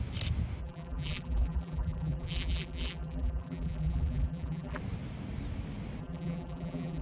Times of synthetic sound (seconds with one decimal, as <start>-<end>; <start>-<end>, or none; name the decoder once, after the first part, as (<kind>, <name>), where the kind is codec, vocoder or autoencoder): 0.6-4.8 (vocoder, BigVGAN v2); 6.0-7.0